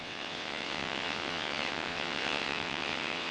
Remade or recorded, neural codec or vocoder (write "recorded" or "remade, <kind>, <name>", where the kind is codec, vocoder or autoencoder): remade, vocoder, WaveNeXt